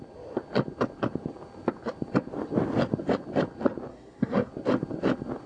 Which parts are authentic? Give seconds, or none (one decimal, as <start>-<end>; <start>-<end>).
0.0-3.9; 4.5-5.5

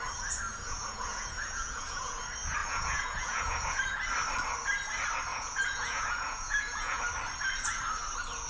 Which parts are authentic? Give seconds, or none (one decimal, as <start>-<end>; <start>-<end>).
0.0-0.5; 2.2-2.6; 3.8-5.3; 7.0-8.5

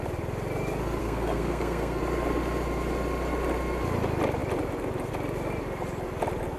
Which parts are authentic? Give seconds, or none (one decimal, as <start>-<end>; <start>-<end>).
0.0-1.0; 2.0-6.6

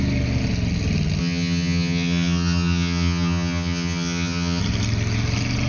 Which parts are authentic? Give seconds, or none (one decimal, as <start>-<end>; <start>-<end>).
0.0-1.2; 4.6-5.7